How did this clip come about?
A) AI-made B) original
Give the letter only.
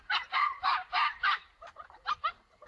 A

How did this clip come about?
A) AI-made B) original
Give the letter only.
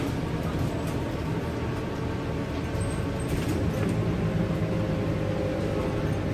B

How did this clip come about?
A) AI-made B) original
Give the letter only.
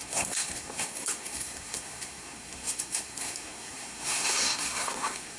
A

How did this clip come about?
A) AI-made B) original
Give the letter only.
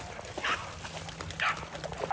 B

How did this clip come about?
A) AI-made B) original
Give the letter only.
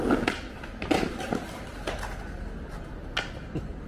B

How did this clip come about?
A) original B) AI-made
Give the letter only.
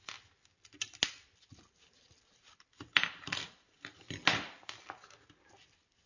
A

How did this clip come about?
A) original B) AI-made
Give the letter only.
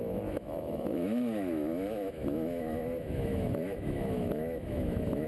B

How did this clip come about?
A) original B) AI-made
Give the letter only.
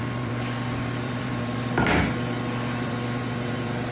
B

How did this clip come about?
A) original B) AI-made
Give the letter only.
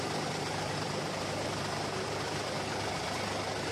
B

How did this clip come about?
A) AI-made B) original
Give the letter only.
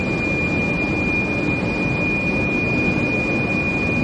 B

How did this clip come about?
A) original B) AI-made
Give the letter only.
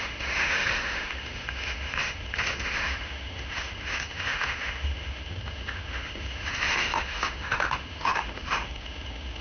B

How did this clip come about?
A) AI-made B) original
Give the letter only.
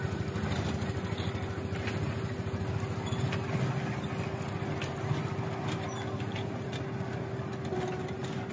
B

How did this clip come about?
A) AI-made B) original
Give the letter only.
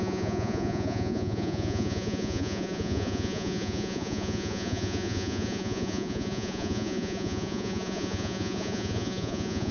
A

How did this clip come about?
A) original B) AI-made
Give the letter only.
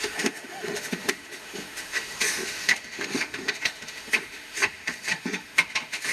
B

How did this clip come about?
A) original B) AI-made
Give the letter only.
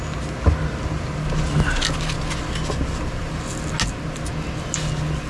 A